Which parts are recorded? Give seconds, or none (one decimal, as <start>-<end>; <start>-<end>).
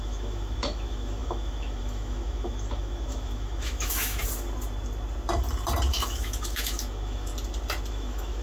4.2-5.9; 7.3-7.9